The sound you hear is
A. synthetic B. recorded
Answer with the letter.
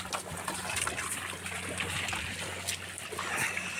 B